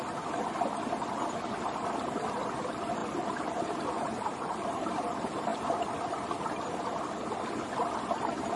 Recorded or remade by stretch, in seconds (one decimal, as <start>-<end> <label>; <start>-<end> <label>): 0.0-3.0 recorded; 3.0-4.8 remade; 4.8-8.6 recorded

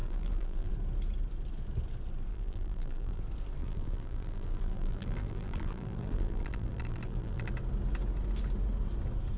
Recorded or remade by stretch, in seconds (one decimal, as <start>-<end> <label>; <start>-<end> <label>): 0.0-0.7 remade; 0.7-2.3 recorded; 2.3-3.2 remade; 3.2-3.6 recorded; 3.6-7.5 remade; 7.5-9.4 recorded

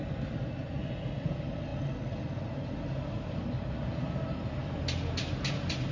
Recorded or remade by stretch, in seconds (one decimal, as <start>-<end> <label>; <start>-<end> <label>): 0.0-5.9 recorded

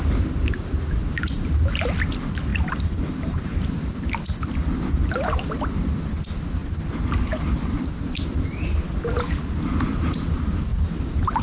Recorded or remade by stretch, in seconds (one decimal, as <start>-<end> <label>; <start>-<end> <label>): 0.0-2.5 recorded; 2.5-3.5 remade; 3.5-10.7 recorded; 10.7-11.4 remade

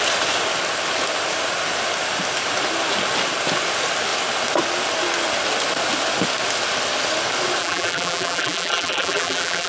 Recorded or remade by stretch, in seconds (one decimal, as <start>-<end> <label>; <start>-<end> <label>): 0.0-7.6 recorded; 7.6-9.7 remade

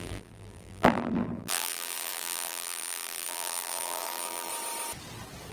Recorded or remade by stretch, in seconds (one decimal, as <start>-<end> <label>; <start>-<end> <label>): 0.0-4.5 remade; 4.5-5.5 recorded